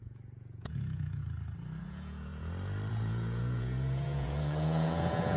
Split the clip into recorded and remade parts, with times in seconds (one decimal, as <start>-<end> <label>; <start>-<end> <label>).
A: 0.0-1.2 remade; 1.2-1.8 recorded; 1.8-2.3 remade; 2.3-2.9 recorded; 2.9-5.4 remade